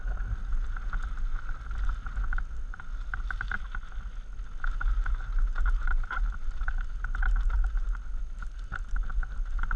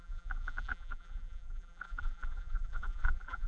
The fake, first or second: second